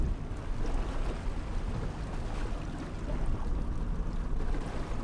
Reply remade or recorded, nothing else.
recorded